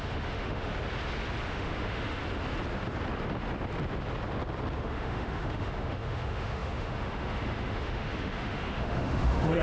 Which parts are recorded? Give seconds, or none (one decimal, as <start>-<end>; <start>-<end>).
0.7-1.5; 2.2-4.8